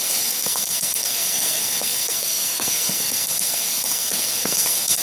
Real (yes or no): no